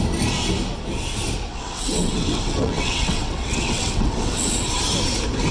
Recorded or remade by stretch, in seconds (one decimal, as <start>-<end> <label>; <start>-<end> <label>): 0.0-1.5 recorded; 1.5-4.8 remade; 4.8-5.5 recorded